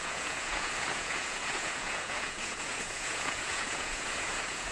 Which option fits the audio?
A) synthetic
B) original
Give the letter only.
A